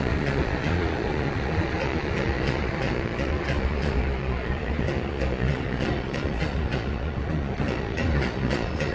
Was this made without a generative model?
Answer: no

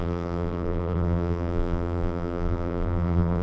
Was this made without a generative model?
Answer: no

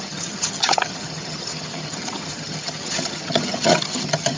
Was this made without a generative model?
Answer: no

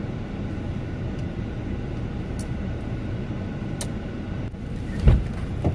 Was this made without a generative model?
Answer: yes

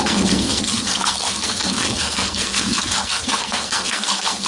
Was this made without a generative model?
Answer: no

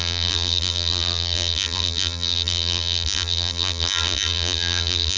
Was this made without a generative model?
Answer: no